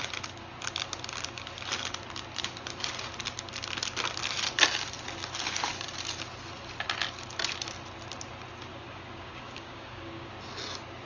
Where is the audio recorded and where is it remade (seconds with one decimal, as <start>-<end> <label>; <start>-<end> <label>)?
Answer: 0.0-8.7 recorded; 8.7-10.3 remade; 10.3-11.1 recorded